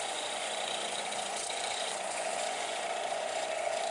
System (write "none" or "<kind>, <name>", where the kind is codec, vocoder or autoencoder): vocoder, Vocos